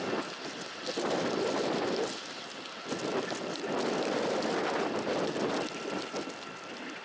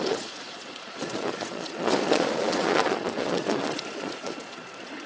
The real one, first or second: first